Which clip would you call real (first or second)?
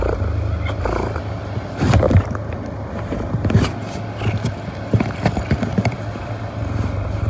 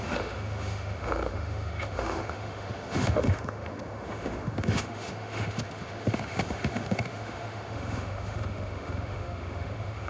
first